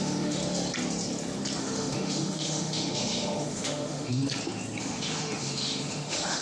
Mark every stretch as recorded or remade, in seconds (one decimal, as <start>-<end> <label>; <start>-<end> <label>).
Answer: 0.0-0.4 remade; 0.4-1.6 recorded; 1.6-4.2 remade; 4.2-4.8 recorded; 4.8-6.4 remade